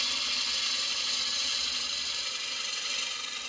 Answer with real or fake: real